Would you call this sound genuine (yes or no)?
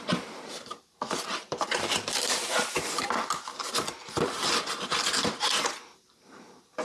no